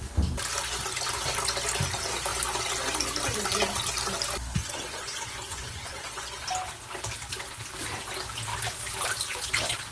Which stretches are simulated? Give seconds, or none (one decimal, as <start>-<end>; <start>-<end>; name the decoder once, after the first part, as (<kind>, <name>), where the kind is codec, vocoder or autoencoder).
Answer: 4.6-6.4 (vocoder, Vocos)